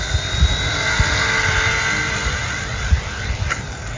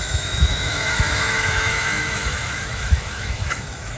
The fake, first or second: second